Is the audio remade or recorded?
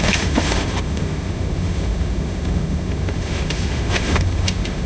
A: remade